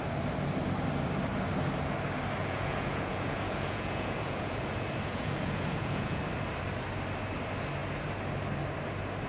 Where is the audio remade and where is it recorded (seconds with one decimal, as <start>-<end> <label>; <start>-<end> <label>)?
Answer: 0.0-2.4 recorded; 2.4-6.2 remade; 6.2-9.3 recorded